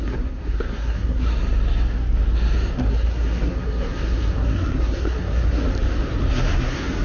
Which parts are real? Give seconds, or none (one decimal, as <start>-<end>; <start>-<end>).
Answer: 1.3-2.7; 5.7-6.3